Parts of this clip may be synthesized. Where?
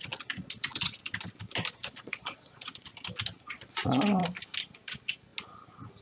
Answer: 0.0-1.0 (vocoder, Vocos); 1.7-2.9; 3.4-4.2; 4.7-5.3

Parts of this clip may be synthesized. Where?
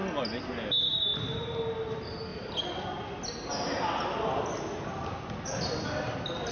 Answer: none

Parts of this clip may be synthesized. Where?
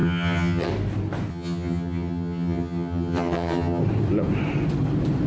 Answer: 0.0-0.7 (vocoder, HiFi-GAN); 1.3-3.8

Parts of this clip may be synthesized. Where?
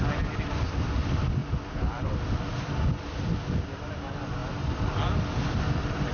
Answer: none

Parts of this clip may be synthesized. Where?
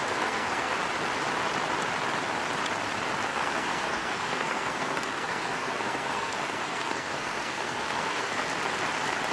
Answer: 0.0-0.7 (codec, SNAC); 3.3-8.4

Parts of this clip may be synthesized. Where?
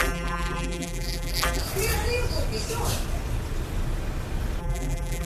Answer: 0.0-1.6 (vocoder, BigVGAN v2); 4.6-5.2